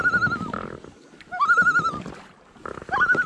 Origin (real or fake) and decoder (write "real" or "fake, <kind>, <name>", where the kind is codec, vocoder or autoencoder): real